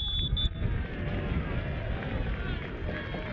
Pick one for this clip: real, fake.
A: real